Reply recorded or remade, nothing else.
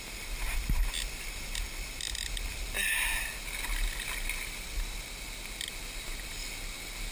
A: recorded